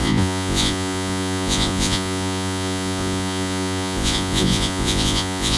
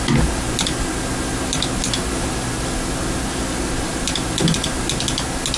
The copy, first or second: first